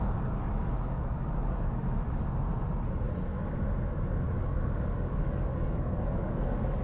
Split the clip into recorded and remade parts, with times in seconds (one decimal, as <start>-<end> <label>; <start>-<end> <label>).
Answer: 0.0-1.8 remade; 1.8-3.8 recorded; 3.8-6.8 remade